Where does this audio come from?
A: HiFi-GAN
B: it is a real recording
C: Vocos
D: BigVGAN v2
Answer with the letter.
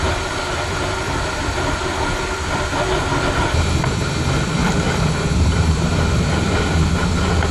D